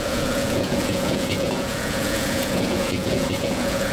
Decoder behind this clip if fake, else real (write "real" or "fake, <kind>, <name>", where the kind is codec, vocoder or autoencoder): fake, vocoder, Vocos